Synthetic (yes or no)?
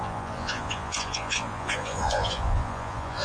yes